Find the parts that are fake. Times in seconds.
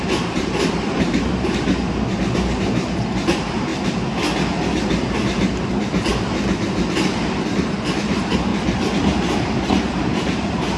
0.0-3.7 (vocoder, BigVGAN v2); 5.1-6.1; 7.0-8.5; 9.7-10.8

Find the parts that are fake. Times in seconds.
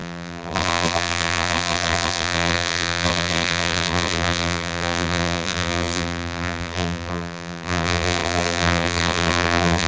0.0-9.9 (vocoder, BigVGAN v2)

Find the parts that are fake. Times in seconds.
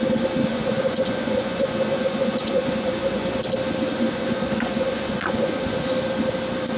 0.5-3.4 (vocoder, Vocos); 3.9-5.9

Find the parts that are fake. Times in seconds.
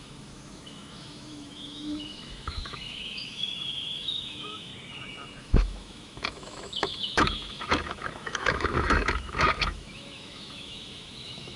0.0-4.7 (autoencoder, DAC-VAE); 5.4-11.6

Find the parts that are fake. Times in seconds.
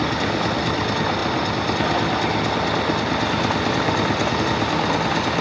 none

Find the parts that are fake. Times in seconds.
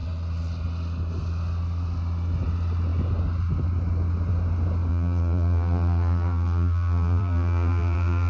4.9-8.3 (vocoder, BigVGAN v2)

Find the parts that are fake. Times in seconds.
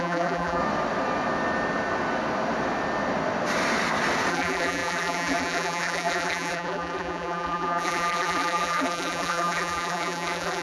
0.0-0.6 (vocoder, BigVGAN v2); 4.3-10.6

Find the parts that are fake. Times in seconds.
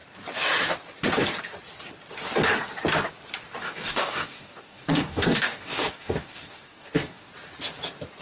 3.6-7.3 (codec, DAC)